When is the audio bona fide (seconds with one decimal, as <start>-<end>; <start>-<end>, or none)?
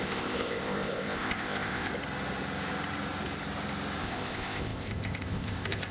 1.9-4.0